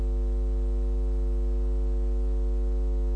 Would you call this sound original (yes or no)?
yes